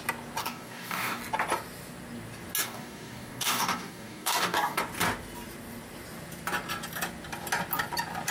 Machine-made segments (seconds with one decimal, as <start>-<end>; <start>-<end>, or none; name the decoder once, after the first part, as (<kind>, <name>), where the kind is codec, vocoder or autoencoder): 0.4-1.2 (codec, DAC); 2.6-4.8